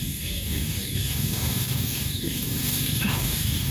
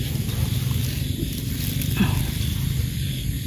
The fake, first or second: first